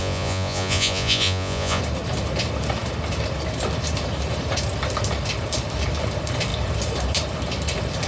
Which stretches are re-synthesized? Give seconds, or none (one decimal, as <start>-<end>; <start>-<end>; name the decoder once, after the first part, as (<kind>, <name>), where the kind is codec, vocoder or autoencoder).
0.0-1.8 (vocoder, Vocos)